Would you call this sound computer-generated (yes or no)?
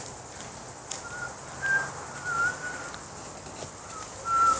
no